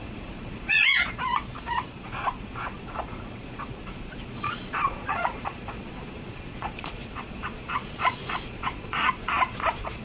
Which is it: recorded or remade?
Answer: remade